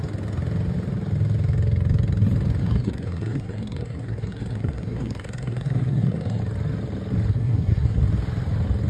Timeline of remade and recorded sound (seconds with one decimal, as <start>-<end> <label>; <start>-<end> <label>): 0.0-2.6 recorded; 2.6-6.4 remade; 6.4-7.3 recorded; 7.3-8.0 remade; 8.0-8.9 recorded